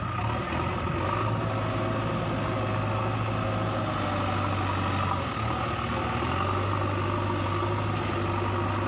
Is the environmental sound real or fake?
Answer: real